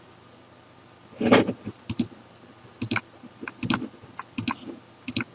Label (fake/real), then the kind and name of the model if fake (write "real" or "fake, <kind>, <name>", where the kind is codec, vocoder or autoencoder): real